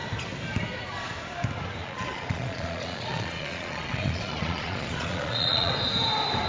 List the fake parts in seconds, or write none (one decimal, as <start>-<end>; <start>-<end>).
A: 1.8-5.7